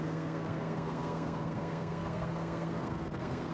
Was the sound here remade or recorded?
remade